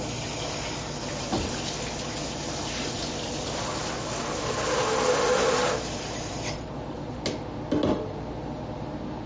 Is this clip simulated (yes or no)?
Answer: no